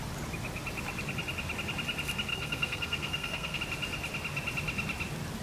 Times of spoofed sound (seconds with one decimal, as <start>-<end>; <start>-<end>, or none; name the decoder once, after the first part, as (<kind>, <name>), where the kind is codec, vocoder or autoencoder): 2.3-3.6 (codec, SNAC)